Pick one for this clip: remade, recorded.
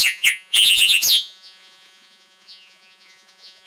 remade